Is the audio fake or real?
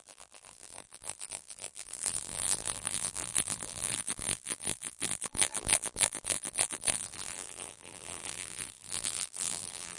fake